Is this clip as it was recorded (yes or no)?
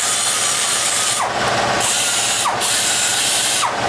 yes